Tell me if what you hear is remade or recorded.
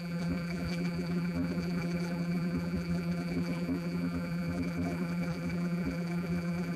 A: remade